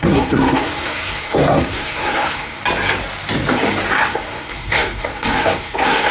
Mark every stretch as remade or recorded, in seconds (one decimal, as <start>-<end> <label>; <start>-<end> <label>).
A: 0.0-2.6 remade; 2.6-4.0 recorded; 4.0-6.1 remade